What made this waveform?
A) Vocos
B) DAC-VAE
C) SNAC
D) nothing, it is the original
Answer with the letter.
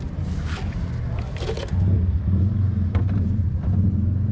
D